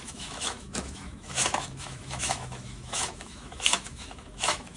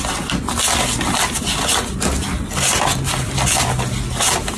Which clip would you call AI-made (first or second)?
first